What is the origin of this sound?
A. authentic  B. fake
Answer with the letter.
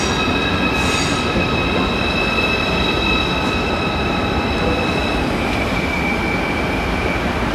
A